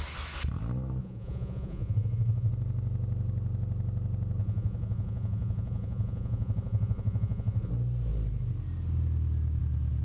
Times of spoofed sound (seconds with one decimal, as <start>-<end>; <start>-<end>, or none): 1.0-2.5; 4.4-7.7